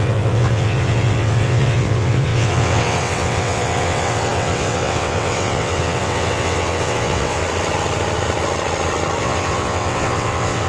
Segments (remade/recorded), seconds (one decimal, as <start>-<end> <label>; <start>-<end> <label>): 0.0-7.4 remade; 7.4-9.2 recorded; 9.2-10.7 remade